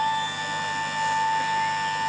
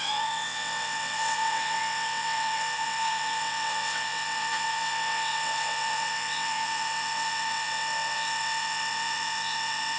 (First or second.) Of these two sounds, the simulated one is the second